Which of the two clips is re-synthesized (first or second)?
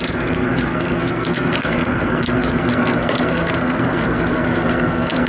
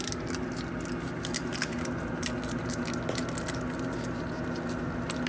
first